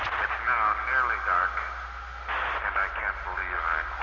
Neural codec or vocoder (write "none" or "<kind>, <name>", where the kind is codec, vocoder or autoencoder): none